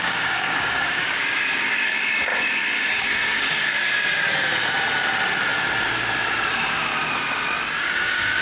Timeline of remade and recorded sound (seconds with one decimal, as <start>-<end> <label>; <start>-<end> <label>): 0.0-4.1 remade; 4.1-6.5 recorded; 6.5-6.9 remade; 6.9-7.8 recorded; 7.8-8.4 remade